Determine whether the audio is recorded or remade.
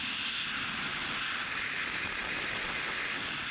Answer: recorded